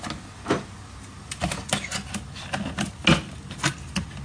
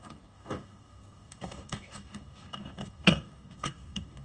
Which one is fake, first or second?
second